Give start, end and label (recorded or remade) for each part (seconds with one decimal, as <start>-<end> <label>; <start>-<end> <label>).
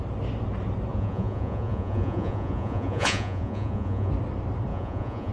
0.0-0.9 recorded; 0.9-4.1 remade; 4.1-4.7 recorded; 4.7-5.3 remade